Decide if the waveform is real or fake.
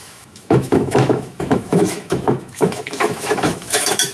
fake